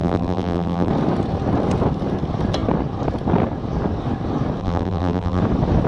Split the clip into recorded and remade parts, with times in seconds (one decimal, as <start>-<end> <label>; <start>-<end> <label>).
0.0-0.9 remade; 0.9-4.6 recorded; 4.6-5.4 remade; 5.4-5.9 recorded